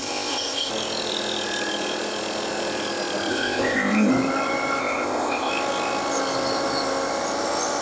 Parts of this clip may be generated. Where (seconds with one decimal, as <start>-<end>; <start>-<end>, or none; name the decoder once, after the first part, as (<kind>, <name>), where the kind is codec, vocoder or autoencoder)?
0.0-0.7 (codec, ZipCodec); 3.3-4.1; 4.8-5.5